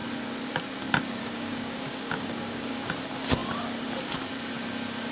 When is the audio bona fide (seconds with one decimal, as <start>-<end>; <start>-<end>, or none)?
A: 0.0-1.2; 2.9-5.1